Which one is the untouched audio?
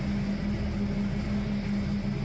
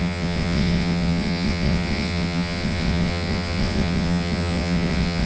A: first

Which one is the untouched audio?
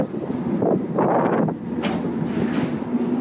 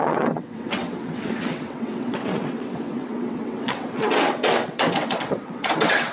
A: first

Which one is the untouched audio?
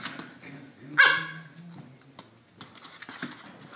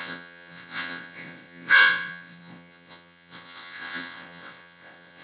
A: first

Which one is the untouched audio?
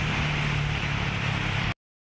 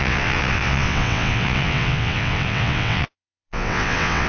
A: first